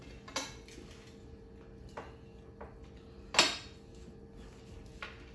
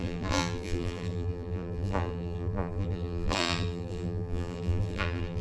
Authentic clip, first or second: first